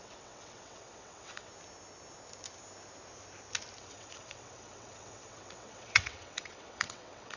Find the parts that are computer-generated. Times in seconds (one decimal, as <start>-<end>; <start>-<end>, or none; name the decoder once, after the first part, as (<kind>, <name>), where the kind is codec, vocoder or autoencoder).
0.0-1.5 (vocoder, WaveNeXt); 3.8-7.4